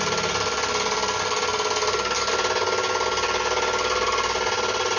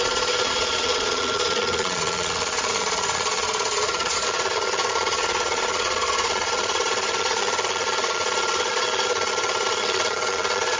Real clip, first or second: first